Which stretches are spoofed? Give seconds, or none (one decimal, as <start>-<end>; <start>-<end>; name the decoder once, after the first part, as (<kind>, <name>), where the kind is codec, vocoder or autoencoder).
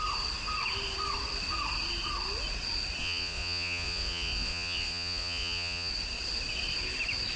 3.0-5.9 (vocoder, Vocos)